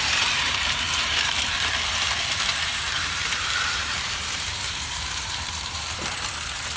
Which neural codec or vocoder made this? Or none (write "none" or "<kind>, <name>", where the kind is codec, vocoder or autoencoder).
vocoder, BigVGAN v2